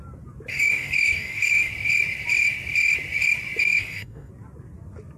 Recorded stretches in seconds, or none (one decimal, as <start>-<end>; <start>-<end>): 0.0-0.5; 1.7-3.6; 4.3-5.2